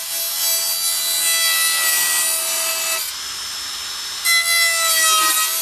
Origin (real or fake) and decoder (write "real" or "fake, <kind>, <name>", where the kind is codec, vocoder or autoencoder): real